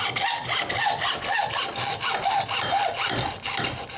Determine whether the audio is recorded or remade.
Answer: recorded